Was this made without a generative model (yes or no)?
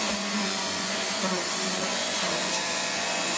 no